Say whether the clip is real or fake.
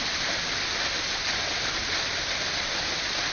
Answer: real